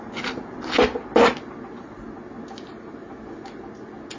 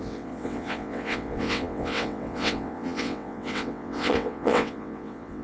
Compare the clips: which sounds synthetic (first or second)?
second